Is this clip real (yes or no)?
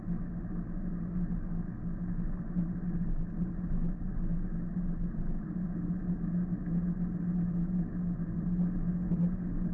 yes